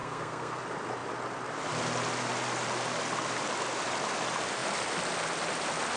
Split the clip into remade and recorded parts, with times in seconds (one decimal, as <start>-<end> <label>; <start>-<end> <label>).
0.0-0.6 remade; 0.6-6.0 recorded